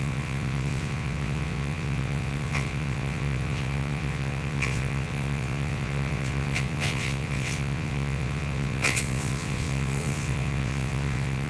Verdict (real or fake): fake